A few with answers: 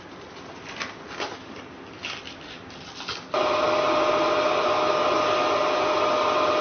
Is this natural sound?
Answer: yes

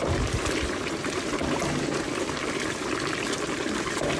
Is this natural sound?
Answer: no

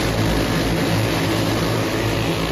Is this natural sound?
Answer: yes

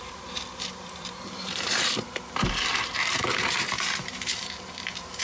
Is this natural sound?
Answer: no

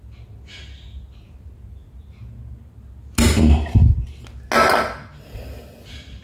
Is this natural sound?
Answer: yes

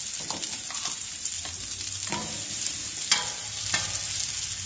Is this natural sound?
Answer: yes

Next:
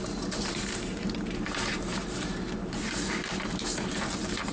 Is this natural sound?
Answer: no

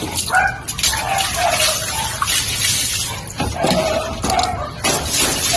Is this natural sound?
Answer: yes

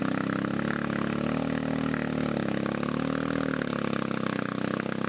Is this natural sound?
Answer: yes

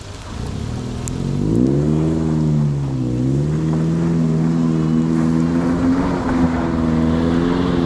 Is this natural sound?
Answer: yes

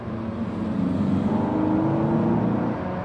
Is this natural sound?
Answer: yes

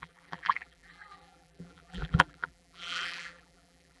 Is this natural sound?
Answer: no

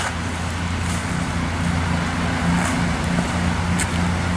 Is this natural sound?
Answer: yes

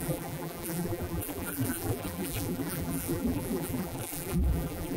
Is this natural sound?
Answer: no